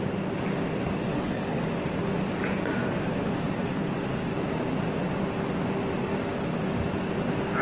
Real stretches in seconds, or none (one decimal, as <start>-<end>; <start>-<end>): 0.0-1.1; 1.6-2.8; 3.9-7.6